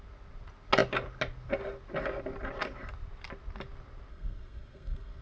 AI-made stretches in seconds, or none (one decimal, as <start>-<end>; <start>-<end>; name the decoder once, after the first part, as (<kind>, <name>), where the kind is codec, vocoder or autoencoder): 4.1-5.2 (codec, SNAC)